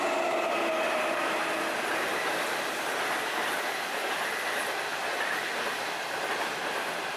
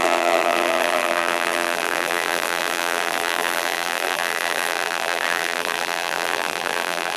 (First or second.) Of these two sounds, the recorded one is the first